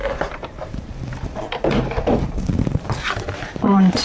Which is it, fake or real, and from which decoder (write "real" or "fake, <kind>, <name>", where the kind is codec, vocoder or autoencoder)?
fake, vocoder, BigVGAN v2